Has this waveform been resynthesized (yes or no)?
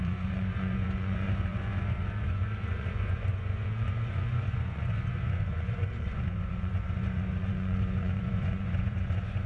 yes